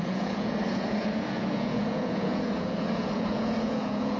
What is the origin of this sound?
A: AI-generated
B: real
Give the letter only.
A